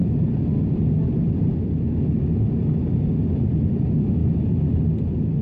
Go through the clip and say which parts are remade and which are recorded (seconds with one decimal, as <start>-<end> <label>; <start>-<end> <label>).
0.0-2.7 remade; 2.7-4.2 recorded; 4.2-4.8 remade; 4.8-5.4 recorded